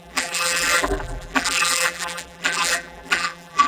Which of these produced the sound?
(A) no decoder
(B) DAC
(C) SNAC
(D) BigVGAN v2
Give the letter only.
D